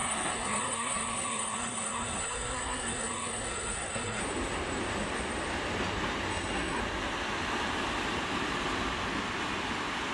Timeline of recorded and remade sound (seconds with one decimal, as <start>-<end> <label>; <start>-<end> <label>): 0.0-4.2 remade; 4.2-6.3 recorded; 6.3-6.8 remade; 6.8-10.1 recorded